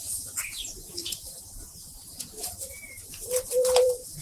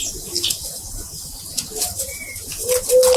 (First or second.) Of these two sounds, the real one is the second